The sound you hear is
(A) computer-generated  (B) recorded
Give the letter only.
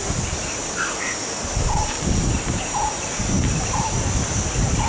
B